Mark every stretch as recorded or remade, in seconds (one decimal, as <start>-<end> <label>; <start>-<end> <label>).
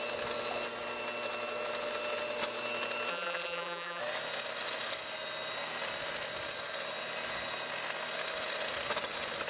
0.0-3.1 recorded; 3.1-4.0 remade; 4.0-9.5 recorded